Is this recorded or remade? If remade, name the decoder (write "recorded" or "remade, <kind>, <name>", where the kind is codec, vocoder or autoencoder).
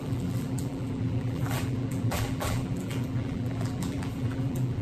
remade, vocoder, BigVGAN v2